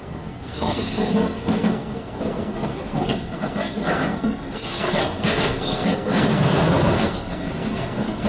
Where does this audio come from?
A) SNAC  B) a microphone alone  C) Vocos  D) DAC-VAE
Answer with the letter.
A